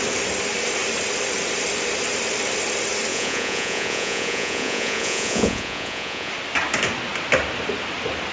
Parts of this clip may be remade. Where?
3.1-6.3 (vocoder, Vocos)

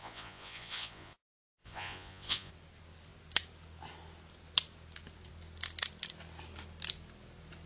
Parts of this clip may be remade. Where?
0.0-2.5 (vocoder, Vocos)

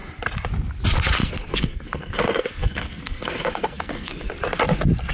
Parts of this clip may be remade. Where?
1.2-4.3 (codec, SNAC)